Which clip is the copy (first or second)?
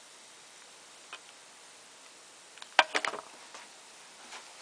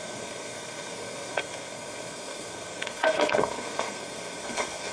second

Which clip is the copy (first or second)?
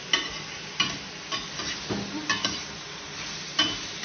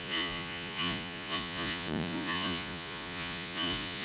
second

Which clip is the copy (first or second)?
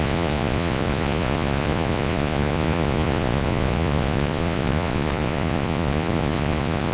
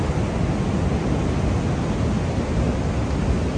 first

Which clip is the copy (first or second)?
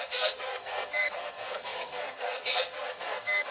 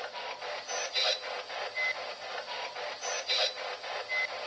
first